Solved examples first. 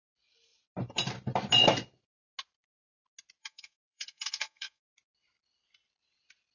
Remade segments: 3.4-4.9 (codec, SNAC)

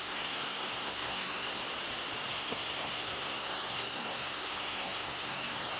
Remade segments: 0.0-1.6 (codec, SNAC); 2.3-5.8

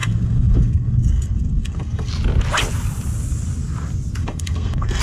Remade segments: 0.0-2.1 (codec, SNAC); 4.2-5.0

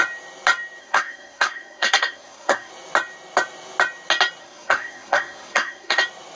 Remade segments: 0.8-2.7 (codec, SNAC); 4.4-6.0

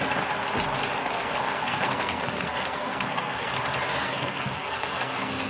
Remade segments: 1.0-3.5 (codec, SNAC); 3.9-5.5